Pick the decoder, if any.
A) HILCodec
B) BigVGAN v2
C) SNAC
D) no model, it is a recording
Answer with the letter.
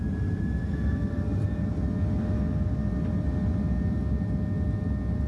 D